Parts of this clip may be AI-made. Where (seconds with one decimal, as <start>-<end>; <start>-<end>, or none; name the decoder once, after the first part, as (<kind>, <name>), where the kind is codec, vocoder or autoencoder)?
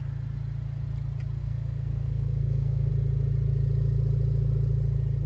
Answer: 1.4-2.9 (codec, SNAC)